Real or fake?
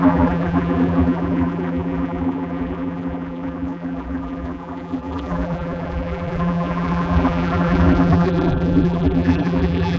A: fake